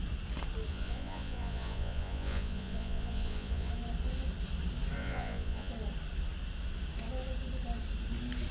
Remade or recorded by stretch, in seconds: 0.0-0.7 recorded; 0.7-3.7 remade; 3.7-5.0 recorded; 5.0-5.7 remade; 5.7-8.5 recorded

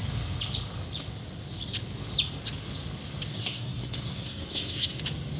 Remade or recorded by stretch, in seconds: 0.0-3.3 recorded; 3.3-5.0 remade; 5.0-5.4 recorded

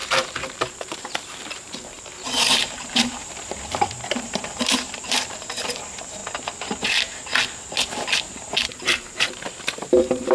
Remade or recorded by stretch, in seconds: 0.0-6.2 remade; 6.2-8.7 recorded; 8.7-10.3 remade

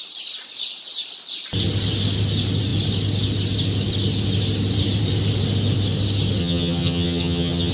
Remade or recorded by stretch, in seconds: 0.0-6.4 recorded; 6.4-7.7 remade